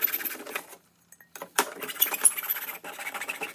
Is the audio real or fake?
real